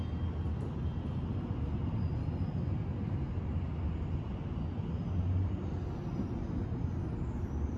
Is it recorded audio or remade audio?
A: recorded